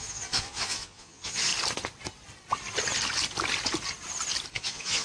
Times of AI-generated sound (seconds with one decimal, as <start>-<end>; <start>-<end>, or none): 0.0-1.5; 4.5-5.0